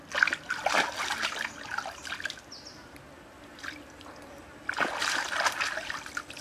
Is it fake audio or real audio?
real